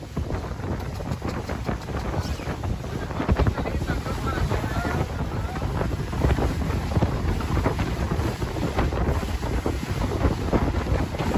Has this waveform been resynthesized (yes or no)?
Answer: yes